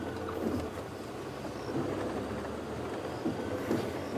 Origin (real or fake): real